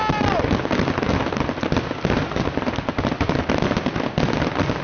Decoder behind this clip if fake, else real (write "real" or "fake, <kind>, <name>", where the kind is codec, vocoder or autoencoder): real